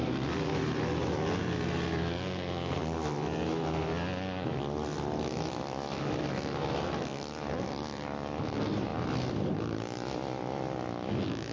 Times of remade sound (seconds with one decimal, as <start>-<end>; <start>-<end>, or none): none